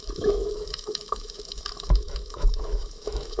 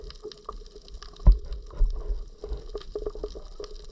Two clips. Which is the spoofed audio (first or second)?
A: first